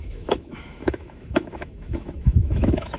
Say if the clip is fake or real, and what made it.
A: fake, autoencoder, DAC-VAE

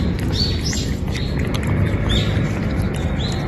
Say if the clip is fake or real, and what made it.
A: real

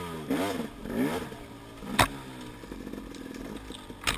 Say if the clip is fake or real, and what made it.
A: real